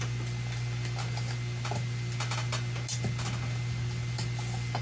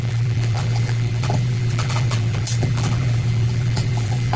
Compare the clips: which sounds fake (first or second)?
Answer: second